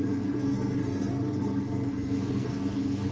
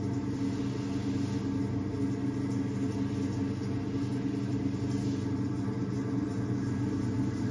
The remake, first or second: first